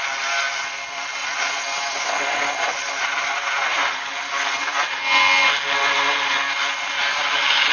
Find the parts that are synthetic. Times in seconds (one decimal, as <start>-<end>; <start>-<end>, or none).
none